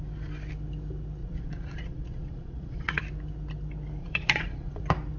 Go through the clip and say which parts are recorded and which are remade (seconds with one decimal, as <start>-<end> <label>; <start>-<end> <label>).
0.0-1.2 recorded; 1.2-3.0 remade; 3.0-4.0 recorded; 4.0-4.8 remade; 4.8-5.2 recorded